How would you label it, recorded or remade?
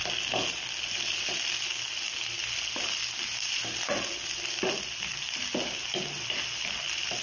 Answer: recorded